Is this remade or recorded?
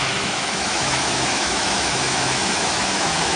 remade